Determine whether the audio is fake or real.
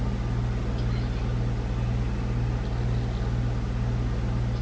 real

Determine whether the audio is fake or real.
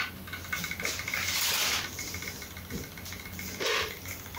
real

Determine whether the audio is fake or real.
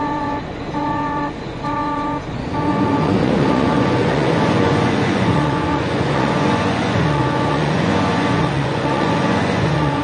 fake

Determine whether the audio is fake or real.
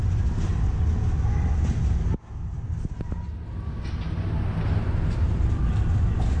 real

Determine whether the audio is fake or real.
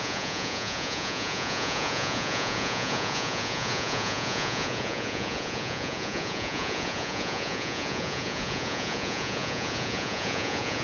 fake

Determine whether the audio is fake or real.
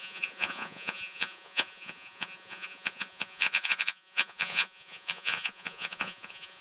fake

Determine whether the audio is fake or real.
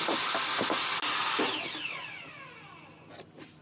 real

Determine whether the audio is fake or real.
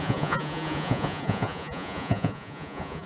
fake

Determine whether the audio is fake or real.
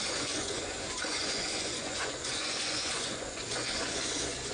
fake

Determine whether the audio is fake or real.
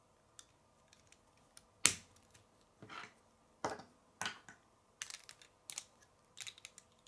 real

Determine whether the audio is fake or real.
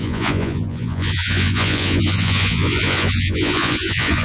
fake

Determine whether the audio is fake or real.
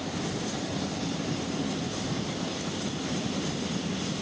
real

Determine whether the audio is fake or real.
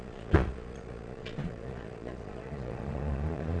fake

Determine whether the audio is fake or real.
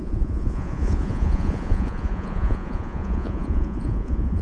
fake